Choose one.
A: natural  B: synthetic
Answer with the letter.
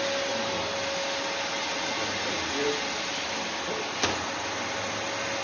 A